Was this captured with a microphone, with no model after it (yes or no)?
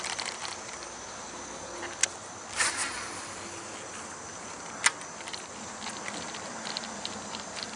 yes